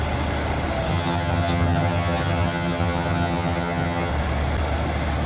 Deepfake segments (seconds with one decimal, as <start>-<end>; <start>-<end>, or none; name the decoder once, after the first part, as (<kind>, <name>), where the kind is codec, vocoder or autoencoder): 0.9-4.1 (vocoder, HiFi-GAN)